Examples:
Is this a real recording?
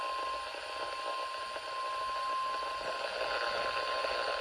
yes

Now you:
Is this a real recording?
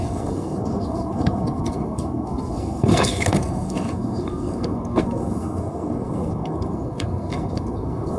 no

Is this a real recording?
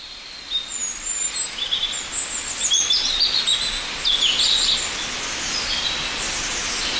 yes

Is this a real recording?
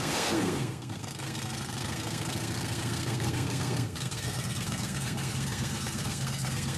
no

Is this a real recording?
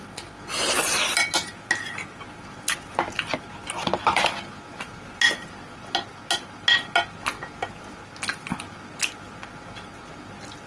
yes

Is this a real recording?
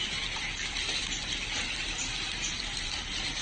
yes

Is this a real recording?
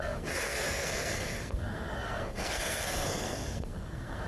no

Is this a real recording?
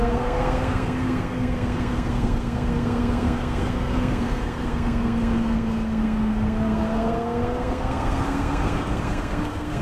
no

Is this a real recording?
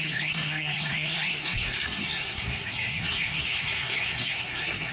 no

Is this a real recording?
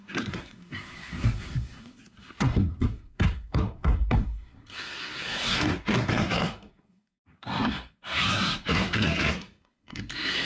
no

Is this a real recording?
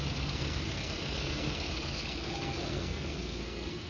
no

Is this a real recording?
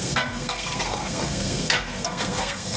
no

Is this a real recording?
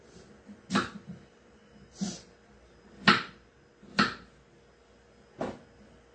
yes